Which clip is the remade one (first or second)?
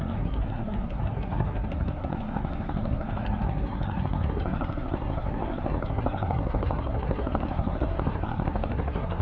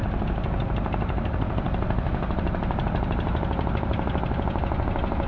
first